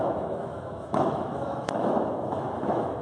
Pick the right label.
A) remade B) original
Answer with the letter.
A